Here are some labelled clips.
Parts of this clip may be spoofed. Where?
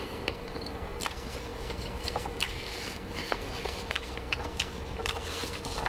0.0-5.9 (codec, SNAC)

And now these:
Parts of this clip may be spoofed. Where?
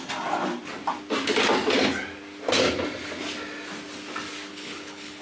4.5-5.2 (codec, HILCodec)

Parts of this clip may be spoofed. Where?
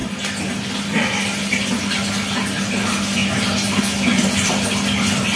none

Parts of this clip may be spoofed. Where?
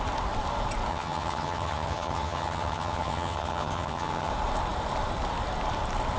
0.9-4.3 (vocoder, HiFi-GAN)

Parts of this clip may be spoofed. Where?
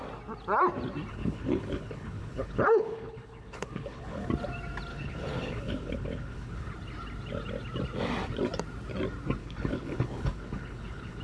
1.1-4.3 (codec, HILCodec); 4.9-6.7; 9.4-11.2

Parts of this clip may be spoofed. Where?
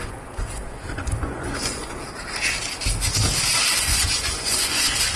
0.0-1.9 (vocoder, Vocos); 3.6-5.2